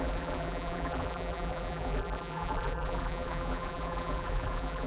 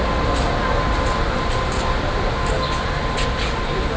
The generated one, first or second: first